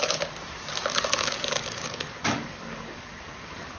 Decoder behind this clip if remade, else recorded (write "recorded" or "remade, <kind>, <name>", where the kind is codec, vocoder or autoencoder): remade, codec, DAC